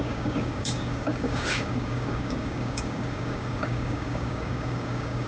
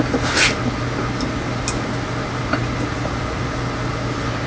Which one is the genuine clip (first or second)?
second